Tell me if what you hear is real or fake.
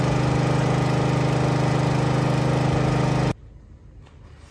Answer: real